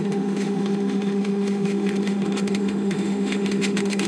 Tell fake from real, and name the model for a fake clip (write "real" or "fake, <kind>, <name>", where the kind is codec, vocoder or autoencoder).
fake, autoencoder, DAC-VAE